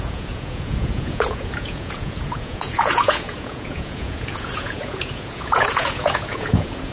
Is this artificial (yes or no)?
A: yes